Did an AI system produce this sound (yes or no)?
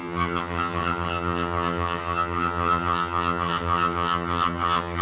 yes